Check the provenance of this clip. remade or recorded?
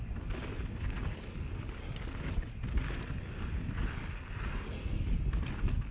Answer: recorded